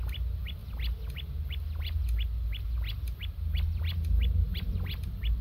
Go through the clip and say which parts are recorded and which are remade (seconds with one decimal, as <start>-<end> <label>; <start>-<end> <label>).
0.0-5.4 recorded